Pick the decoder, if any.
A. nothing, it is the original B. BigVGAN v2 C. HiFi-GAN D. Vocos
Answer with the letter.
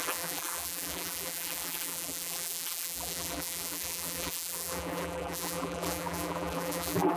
B